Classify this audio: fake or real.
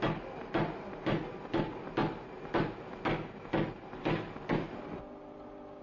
real